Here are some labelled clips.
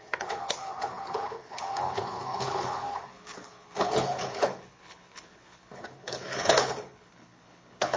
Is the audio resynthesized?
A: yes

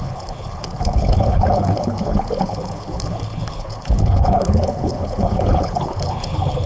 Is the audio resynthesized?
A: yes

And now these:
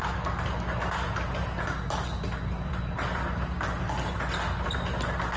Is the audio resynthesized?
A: no